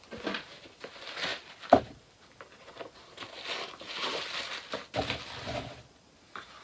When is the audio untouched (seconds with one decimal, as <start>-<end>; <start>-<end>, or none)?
0.0-6.6